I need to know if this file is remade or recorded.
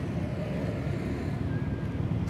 recorded